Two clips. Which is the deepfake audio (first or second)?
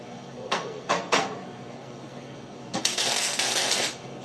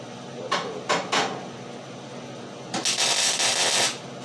first